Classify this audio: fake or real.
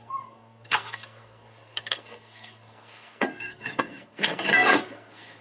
fake